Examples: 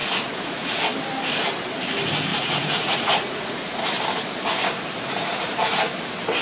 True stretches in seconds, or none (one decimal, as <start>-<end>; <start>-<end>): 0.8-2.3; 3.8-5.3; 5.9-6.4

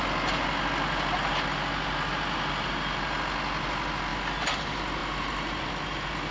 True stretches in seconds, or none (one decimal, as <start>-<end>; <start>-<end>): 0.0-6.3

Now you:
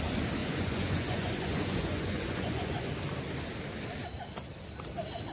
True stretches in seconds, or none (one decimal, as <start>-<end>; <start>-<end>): 0.0-0.4; 2.9-5.3

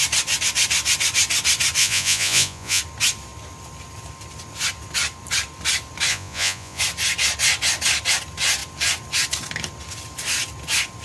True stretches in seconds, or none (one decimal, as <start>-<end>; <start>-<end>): 0.0-1.8; 2.8-6.1; 6.8-11.0

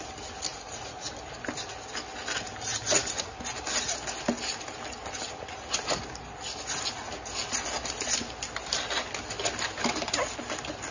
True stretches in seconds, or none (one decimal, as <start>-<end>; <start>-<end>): 0.0-0.5; 1.1-10.9

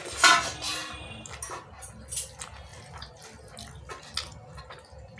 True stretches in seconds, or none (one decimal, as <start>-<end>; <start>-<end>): 0.0-5.2

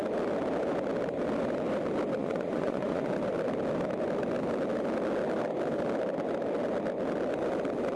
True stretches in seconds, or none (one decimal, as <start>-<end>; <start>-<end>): 0.0-2.2; 3.1-8.0